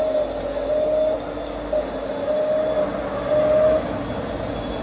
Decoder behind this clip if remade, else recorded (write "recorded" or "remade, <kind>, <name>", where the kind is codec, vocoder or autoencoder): recorded